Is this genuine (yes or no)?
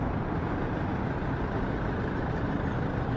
yes